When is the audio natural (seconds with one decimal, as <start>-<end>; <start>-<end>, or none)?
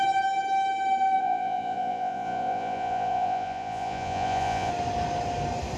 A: 0.0-1.2; 4.7-5.8